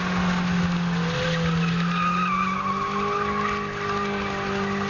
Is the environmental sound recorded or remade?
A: recorded